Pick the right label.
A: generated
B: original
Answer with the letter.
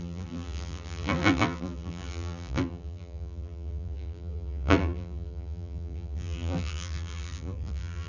A